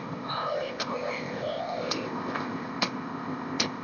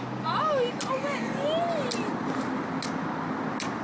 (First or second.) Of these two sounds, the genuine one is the second